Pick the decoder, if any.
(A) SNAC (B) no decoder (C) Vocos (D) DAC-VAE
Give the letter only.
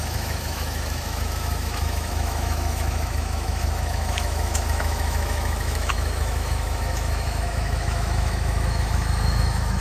D